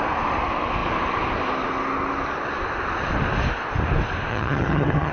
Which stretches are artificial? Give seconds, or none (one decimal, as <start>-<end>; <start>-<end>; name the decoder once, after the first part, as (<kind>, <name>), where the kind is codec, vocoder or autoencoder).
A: 4.3-5.1 (vocoder, HiFi-GAN)